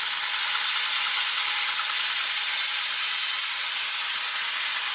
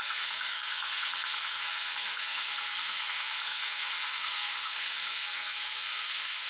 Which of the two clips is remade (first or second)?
second